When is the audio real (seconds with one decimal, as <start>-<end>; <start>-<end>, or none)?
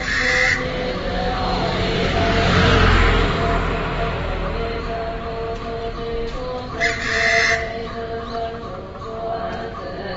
0.0-10.2